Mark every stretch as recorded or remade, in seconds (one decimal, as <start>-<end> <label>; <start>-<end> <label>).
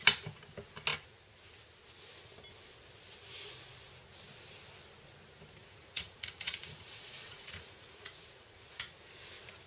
0.0-5.6 recorded; 5.6-8.8 remade; 8.8-9.7 recorded